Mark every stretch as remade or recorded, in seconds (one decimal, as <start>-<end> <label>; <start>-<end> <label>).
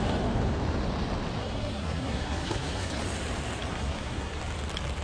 0.0-1.4 recorded; 1.4-3.0 remade; 3.0-3.7 recorded; 3.7-4.4 remade; 4.4-5.0 recorded